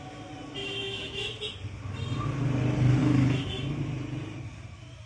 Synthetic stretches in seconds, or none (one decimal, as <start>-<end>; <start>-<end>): 0.6-1.4; 3.0-3.5